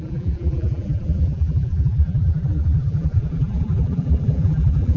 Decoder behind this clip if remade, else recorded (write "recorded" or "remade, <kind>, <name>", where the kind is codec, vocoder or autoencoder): remade, vocoder, BigVGAN v2